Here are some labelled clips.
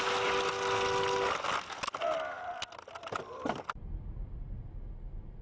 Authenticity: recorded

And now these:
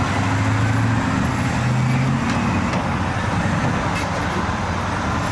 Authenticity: recorded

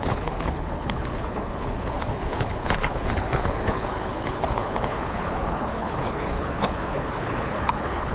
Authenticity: remade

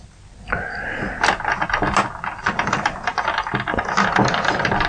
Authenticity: recorded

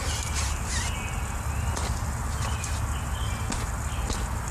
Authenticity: recorded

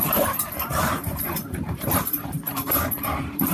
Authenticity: remade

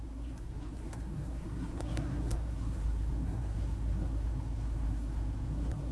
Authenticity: remade